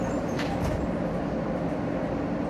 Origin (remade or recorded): recorded